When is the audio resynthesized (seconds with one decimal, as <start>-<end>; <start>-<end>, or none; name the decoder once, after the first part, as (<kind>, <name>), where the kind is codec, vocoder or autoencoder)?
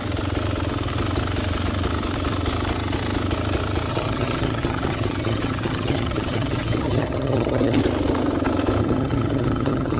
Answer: 3.9-7.8 (vocoder, HiFi-GAN); 8.8-10.0